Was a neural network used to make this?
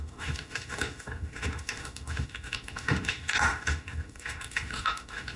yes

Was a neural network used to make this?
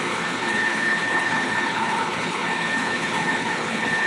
yes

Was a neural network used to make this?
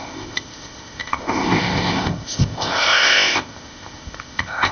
yes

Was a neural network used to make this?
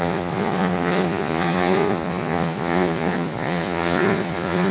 yes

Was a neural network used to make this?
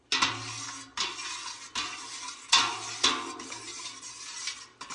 no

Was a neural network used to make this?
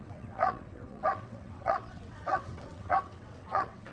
yes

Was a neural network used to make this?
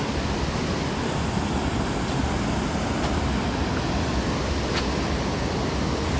no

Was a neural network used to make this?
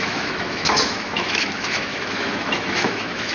yes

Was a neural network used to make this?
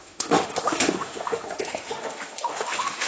yes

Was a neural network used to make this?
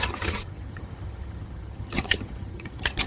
yes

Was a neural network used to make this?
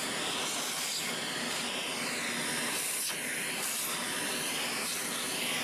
no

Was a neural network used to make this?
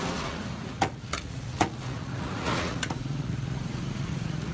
yes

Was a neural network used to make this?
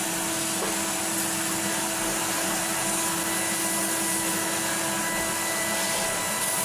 no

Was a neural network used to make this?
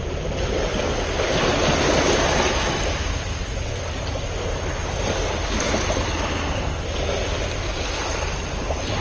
no